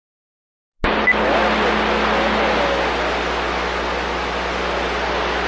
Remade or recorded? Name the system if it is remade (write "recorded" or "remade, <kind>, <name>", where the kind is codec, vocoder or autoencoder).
recorded